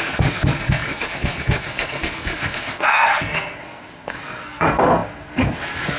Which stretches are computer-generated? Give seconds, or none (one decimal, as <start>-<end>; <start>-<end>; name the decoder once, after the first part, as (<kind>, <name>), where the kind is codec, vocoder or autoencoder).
0.0-6.0 (codec, SNAC)